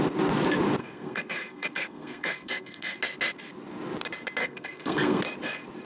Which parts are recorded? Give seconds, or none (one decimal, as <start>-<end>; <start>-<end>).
0.0-0.8; 3.0-4.4; 5.2-5.8